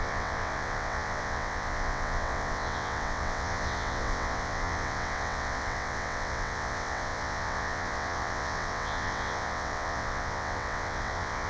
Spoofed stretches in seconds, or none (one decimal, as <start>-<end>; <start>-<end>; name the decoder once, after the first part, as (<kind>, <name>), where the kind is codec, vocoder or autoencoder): 0.0-11.5 (vocoder, WaveNeXt)

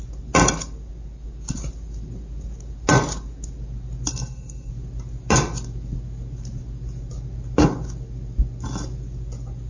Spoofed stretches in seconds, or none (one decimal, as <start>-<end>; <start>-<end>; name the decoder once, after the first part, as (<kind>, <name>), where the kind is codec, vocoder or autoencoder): 4.1-4.7 (codec, SNAC)

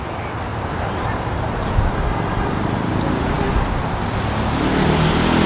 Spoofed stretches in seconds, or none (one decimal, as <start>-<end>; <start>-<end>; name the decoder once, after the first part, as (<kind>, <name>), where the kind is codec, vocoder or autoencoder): 0.5-3.5 (vocoder, BigVGAN v2)

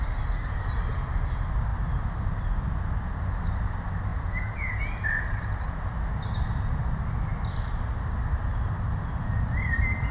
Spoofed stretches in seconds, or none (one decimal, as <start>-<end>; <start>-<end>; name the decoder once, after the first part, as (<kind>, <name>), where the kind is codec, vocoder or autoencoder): 4.1-4.7 (vocoder, Vocos)

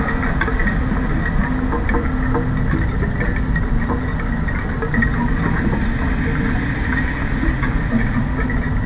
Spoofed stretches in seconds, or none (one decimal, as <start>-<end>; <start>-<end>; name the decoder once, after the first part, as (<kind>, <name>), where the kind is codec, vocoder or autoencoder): none

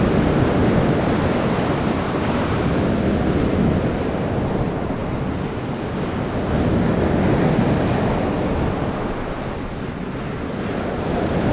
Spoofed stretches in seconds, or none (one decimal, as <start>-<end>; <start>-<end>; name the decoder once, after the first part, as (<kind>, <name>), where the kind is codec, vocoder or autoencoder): none

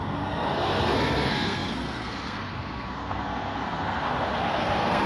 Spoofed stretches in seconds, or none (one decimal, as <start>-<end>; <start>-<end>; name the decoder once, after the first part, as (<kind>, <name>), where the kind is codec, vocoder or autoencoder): 0.0-5.1 (codec, SNAC)